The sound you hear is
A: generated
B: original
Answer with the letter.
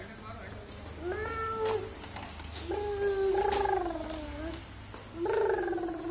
B